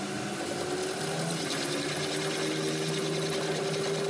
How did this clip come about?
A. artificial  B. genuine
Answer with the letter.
B